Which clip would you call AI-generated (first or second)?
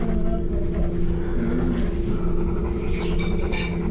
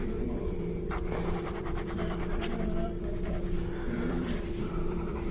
second